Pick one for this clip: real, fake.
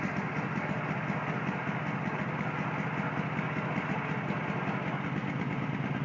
real